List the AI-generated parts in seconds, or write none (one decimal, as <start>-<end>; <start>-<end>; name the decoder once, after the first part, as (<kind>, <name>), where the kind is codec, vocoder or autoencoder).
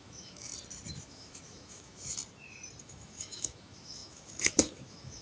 0.0-0.5 (autoencoder, DAC-VAE); 1.0-2.2; 2.8-5.2